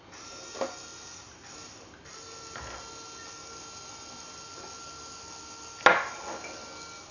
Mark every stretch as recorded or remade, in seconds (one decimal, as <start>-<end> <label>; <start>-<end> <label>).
0.0-7.1 recorded